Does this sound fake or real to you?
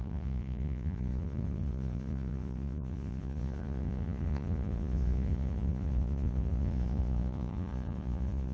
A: fake